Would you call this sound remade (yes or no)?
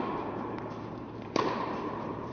yes